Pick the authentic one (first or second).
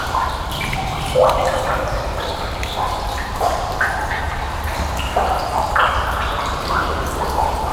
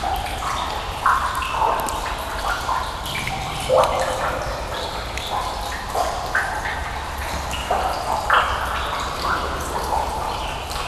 second